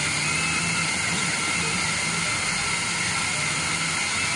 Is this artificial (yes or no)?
no